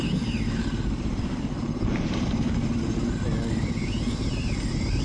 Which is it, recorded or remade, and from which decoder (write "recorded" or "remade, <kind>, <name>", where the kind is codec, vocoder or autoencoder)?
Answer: recorded